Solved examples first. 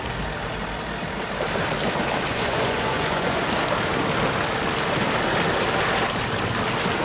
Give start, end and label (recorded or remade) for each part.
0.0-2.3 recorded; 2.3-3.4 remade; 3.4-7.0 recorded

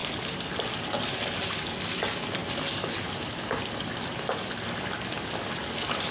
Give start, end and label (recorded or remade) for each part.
0.0-6.1 recorded

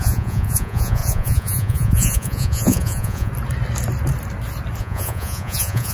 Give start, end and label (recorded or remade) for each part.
0.0-3.3 remade; 3.3-4.8 recorded; 4.8-5.9 remade

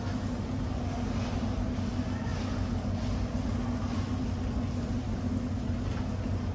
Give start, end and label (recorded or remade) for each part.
0.0-6.5 recorded